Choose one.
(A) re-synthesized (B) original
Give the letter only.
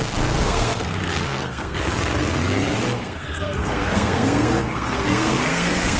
A